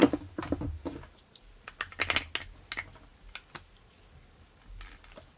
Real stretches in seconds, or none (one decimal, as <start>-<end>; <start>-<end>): 0.0-5.4